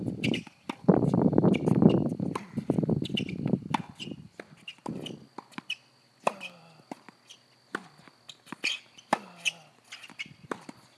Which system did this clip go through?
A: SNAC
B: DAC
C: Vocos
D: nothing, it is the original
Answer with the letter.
D